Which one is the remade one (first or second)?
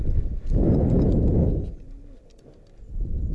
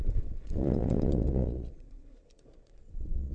second